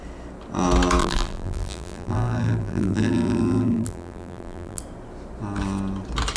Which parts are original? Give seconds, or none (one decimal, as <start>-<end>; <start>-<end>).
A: 0.0-1.0; 4.8-6.4